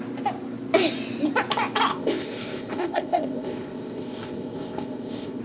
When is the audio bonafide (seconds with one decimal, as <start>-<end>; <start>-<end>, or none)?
0.0-1.9